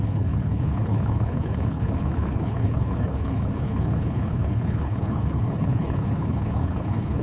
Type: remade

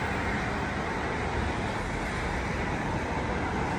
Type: recorded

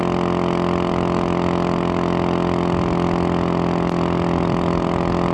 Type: recorded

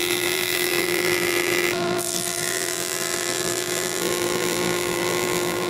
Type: remade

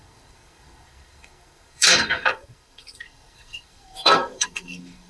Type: remade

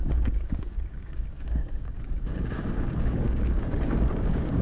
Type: remade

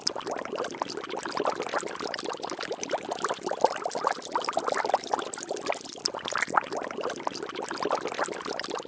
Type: recorded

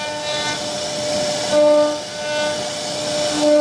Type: recorded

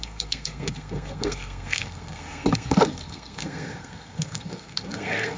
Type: remade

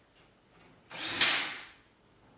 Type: recorded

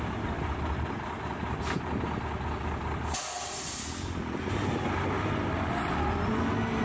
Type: recorded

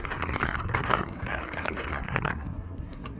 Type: remade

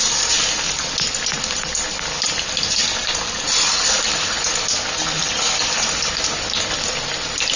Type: recorded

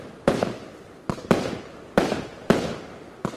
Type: recorded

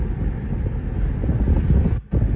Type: recorded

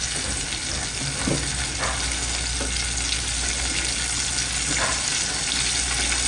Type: recorded